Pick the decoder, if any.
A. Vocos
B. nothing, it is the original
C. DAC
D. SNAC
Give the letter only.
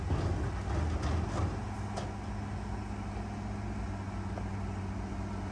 B